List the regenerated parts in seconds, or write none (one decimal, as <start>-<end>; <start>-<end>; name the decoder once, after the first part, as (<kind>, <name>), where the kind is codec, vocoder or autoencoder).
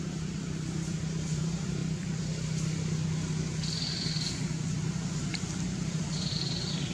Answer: 0.0-1.8 (vocoder, BigVGAN v2); 5.9-6.9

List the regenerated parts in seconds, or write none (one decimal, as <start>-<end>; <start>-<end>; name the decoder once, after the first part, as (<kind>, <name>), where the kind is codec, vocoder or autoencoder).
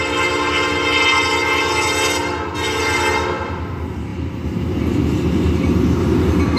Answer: none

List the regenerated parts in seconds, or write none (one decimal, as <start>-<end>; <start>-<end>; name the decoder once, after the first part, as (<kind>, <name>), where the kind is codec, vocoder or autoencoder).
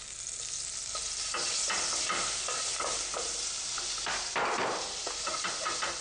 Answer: none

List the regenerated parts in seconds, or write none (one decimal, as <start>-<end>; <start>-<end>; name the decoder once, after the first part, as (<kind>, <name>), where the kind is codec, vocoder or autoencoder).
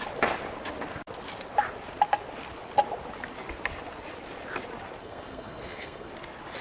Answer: 5.0-6.1 (codec, SNAC)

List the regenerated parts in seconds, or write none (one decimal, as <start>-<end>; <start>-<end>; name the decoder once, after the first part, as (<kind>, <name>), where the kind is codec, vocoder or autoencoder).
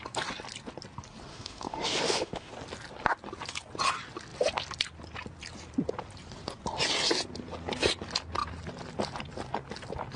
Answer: 1.3-2.5 (autoencoder, DAC-VAE)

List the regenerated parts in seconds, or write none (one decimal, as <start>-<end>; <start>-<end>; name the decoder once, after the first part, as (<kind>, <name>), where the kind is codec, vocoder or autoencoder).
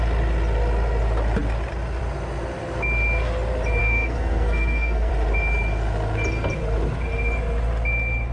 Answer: 3.8-5.1 (codec, SNAC)